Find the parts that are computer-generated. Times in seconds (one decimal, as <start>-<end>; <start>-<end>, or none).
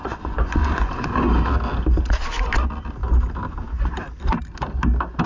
0.0-1.1